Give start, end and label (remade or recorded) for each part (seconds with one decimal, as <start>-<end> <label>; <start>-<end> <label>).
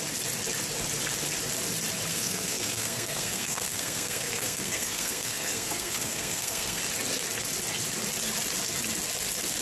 0.0-2.1 recorded; 2.1-6.8 remade; 6.8-9.6 recorded